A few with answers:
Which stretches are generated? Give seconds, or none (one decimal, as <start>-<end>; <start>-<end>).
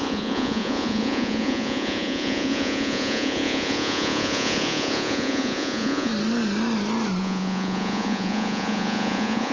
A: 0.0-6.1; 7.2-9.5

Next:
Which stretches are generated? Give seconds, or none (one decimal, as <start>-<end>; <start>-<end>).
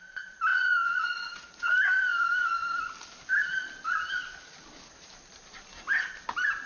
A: 0.5-1.7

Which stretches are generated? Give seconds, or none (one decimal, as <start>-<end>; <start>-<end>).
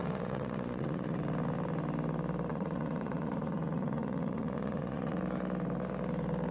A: 0.0-1.2; 2.5-5.2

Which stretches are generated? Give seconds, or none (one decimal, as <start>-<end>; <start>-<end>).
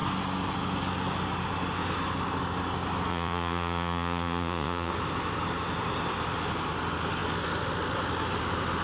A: 3.1-4.9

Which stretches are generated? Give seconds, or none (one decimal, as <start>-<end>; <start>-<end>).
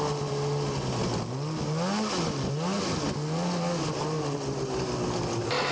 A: none